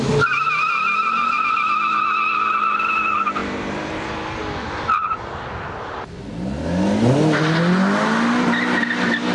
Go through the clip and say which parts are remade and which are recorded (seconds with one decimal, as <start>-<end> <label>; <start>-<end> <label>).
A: 0.0-9.3 recorded